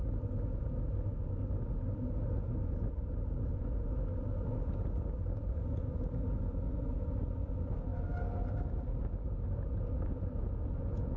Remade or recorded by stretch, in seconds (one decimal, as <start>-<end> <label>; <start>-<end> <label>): 0.0-10.4 recorded; 10.4-11.2 remade